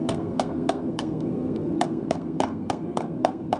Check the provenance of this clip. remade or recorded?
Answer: remade